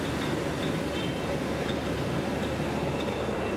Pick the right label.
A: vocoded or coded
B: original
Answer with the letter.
B